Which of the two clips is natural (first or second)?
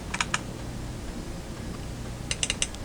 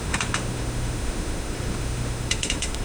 first